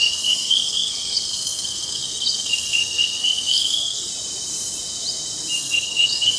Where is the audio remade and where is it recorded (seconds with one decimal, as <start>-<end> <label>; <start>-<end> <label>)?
0.0-4.1 remade; 4.1-5.6 recorded; 5.6-6.4 remade